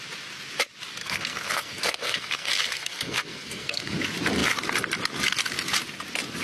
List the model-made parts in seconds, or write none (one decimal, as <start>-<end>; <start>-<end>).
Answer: 1.0-4.0